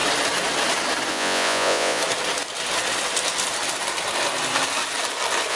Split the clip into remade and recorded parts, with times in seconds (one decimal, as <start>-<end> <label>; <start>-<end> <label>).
0.0-1.1 recorded; 1.1-2.0 remade; 2.0-5.5 recorded